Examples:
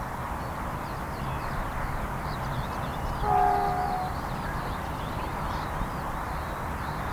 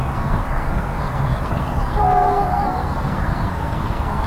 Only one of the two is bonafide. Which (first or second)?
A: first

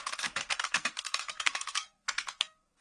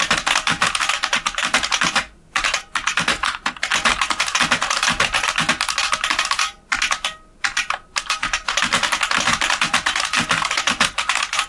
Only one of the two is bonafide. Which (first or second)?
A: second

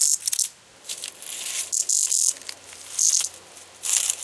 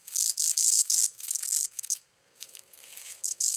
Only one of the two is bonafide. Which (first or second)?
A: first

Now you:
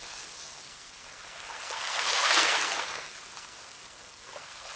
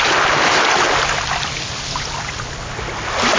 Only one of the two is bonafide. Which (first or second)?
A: second